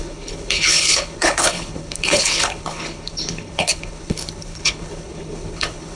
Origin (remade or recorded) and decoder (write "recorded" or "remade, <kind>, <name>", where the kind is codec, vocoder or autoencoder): remade, codec, HILCodec